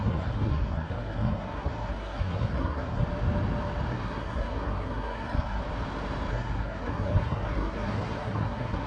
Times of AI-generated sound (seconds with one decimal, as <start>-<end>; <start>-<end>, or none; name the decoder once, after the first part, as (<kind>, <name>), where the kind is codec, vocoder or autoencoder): 0.0-3.0 (codec, SNAC); 3.9-5.6; 6.3-8.9